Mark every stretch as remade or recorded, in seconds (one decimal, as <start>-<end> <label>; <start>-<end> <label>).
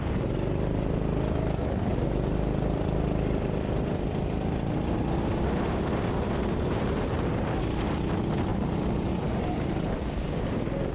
0.0-1.9 recorded; 1.9-7.1 remade; 7.1-8.5 recorded; 8.5-10.9 remade